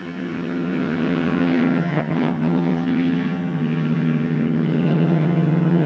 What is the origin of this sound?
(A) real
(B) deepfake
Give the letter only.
B